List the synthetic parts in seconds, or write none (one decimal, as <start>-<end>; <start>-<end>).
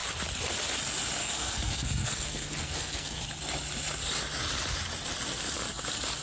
1.2-3.2